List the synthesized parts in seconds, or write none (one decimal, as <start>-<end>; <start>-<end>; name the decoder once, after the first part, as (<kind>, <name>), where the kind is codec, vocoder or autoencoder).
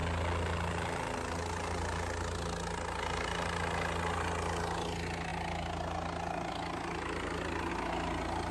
none